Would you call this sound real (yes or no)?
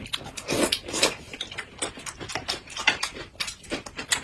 yes